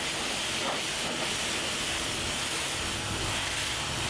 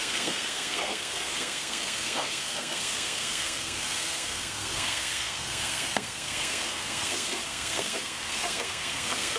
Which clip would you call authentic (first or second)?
first